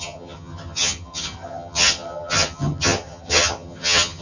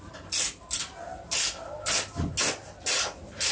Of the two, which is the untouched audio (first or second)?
second